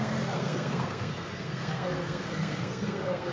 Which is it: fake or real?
fake